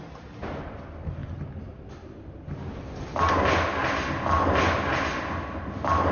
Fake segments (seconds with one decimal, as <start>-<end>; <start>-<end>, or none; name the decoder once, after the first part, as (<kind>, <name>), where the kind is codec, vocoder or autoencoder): none